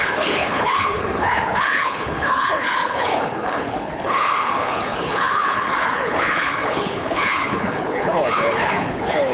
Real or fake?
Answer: fake